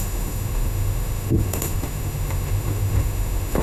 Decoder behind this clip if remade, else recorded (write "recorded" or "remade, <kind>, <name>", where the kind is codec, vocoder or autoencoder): remade, autoencoder, DAC-VAE